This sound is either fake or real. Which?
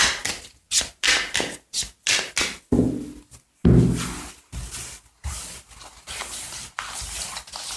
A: real